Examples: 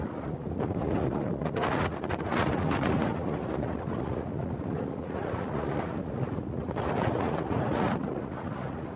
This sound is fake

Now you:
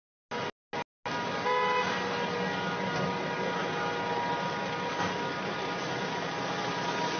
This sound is real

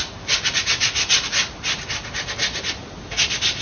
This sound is real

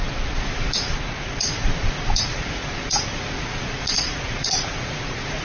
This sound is fake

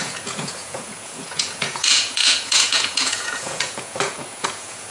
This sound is fake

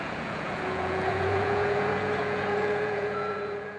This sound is fake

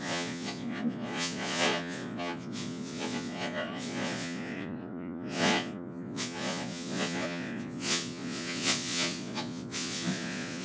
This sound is fake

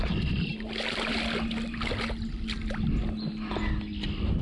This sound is real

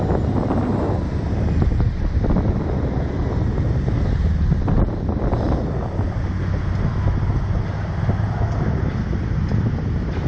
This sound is real